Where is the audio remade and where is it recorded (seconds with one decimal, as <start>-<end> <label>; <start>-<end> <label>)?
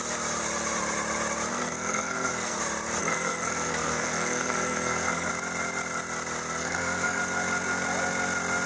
0.0-1.5 recorded; 1.5-2.6 remade; 2.6-3.0 recorded; 3.0-5.3 remade; 5.3-6.6 recorded; 6.6-7.2 remade; 7.2-8.7 recorded